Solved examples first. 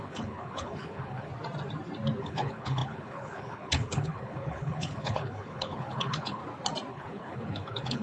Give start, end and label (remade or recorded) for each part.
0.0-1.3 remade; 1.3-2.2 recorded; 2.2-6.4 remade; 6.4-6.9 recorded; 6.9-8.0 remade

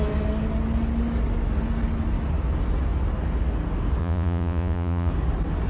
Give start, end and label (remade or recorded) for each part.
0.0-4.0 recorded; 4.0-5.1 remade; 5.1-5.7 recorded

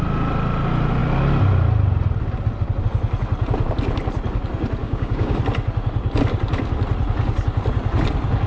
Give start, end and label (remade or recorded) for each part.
0.0-4.8 recorded; 4.8-5.4 remade; 5.4-8.5 recorded

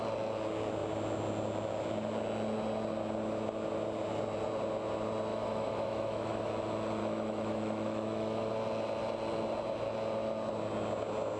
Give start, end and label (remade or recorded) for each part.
0.0-5.3 recorded; 5.3-6.5 remade; 6.5-7.0 recorded; 7.0-8.5 remade; 8.5-11.4 recorded